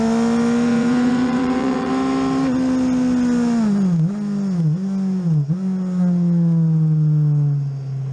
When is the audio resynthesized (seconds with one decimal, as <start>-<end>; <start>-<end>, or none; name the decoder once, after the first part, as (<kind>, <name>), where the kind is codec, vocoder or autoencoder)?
0.7-1.9 (vocoder, Vocos)